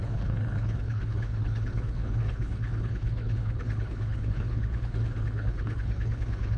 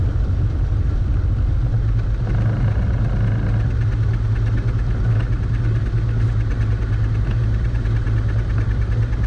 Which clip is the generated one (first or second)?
first